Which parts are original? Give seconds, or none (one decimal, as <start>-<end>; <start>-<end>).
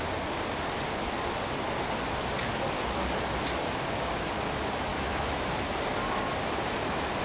0.0-4.9; 5.5-7.2